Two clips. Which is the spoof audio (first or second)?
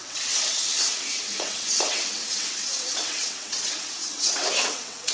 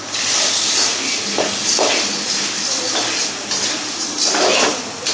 first